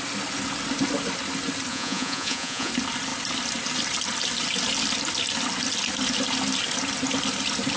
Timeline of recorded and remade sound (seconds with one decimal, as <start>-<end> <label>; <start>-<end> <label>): 0.0-1.7 recorded; 1.7-2.7 remade; 2.7-7.8 recorded